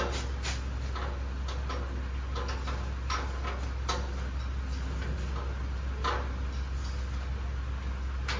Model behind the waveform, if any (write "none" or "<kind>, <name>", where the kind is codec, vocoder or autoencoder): none